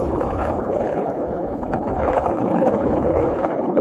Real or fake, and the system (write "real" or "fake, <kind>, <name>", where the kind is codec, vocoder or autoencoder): fake, codec, HILCodec